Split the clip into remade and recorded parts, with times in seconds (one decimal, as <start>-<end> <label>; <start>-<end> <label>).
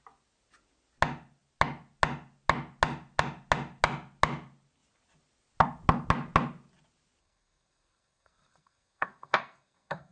0.0-7.2 recorded; 7.2-10.1 remade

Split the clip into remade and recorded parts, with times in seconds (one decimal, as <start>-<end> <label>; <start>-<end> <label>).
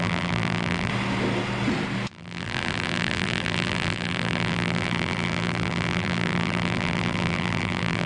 0.0-0.9 remade; 0.9-2.1 recorded; 2.1-8.1 remade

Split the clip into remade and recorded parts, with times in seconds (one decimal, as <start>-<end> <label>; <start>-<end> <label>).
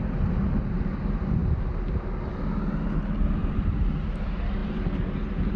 0.0-3.4 recorded; 3.4-3.9 remade; 3.9-5.6 recorded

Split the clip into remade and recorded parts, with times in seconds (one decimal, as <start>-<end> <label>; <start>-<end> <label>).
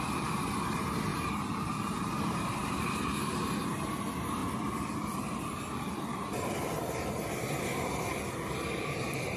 0.0-4.4 remade; 4.4-4.9 recorded; 4.9-9.4 remade